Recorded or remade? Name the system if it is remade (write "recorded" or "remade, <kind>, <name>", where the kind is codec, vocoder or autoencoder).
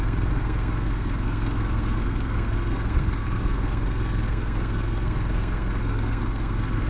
remade, codec, SNAC